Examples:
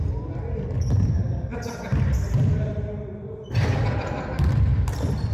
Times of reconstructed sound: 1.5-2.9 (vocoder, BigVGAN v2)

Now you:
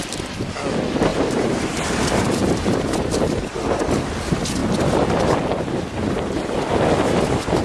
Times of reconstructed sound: 1.1-3.2 (vocoder, BigVGAN v2)

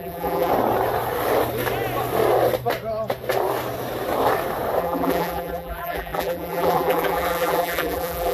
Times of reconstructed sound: 0.0-0.5 (vocoder, BigVGAN v2); 4.8-8.3